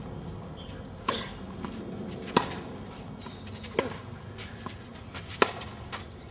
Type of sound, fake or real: real